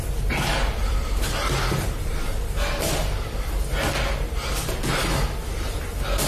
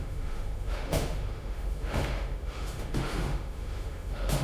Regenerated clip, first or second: second